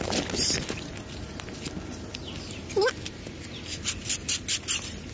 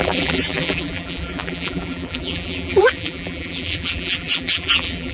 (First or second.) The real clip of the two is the first